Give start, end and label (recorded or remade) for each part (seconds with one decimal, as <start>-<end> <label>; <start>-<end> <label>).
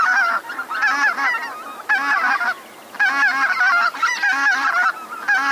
0.0-5.5 recorded